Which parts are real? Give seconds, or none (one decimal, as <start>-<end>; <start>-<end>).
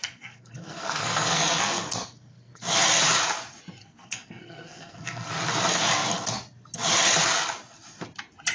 2.6-3.8; 5.3-8.5